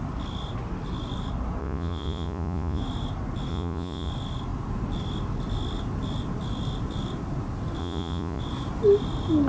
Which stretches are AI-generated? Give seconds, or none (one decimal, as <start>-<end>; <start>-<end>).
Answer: 1.6-2.8; 3.5-4.1; 7.8-8.4